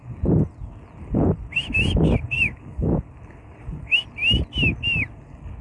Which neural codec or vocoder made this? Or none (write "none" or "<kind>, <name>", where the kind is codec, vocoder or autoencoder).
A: none